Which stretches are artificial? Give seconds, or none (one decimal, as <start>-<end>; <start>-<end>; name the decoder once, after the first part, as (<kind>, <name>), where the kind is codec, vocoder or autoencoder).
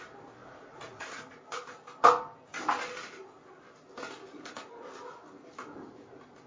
0.4-1.2 (vocoder, Vocos)